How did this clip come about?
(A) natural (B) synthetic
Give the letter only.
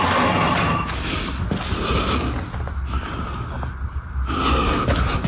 A